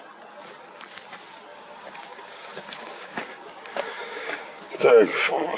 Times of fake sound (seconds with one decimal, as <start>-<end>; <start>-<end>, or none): 1.5-4.9